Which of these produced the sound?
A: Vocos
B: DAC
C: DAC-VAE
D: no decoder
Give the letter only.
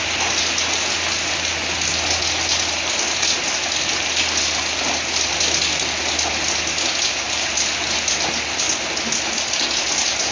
D